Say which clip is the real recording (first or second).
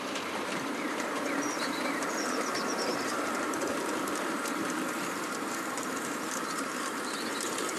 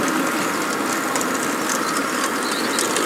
second